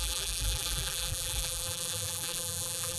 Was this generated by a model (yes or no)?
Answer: yes